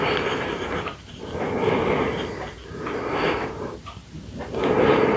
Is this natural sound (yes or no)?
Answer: yes